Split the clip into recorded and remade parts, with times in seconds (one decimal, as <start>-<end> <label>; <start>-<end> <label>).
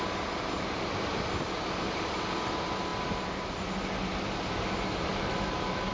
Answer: 0.0-5.1 recorded; 5.1-5.9 remade